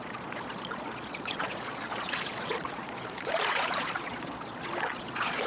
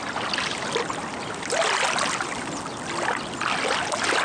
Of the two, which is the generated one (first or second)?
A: first